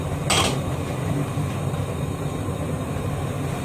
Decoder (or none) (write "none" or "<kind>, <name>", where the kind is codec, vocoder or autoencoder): none